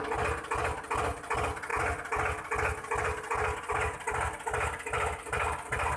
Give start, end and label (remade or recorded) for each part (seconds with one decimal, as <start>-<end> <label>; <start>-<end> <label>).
0.0-6.0 recorded